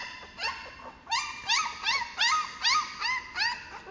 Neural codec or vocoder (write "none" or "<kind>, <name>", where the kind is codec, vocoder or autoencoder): none